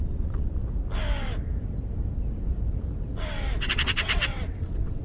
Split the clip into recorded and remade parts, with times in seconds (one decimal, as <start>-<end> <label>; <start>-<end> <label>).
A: 0.0-0.6 remade; 0.6-3.6 recorded; 3.6-5.0 remade